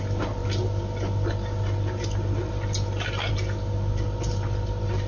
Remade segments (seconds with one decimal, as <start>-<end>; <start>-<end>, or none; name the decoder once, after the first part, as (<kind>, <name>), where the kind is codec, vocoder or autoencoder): none